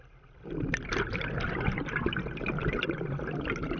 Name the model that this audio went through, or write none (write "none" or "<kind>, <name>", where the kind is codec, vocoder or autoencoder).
none